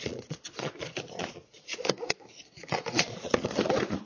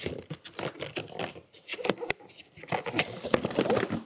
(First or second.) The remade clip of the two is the first